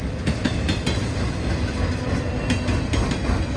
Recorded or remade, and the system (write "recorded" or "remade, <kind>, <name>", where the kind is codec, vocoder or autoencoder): recorded